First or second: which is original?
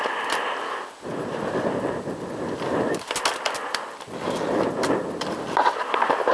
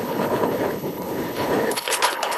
first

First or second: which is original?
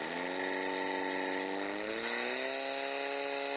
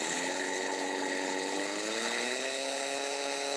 first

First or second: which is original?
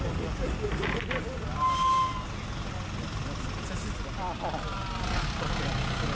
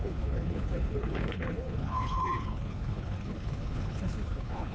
first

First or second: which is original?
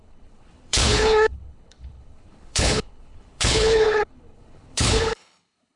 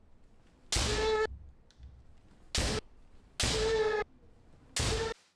second